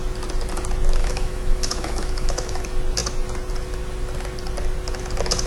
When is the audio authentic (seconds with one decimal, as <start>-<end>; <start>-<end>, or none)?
0.0-1.0; 2.6-5.5